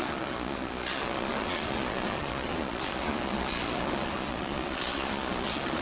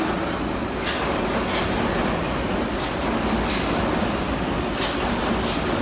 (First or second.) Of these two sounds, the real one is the second